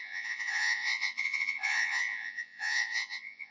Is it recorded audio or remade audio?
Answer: remade